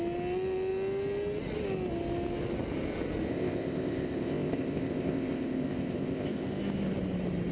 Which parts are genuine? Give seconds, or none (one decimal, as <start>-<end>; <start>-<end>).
0.0-3.3; 6.6-7.5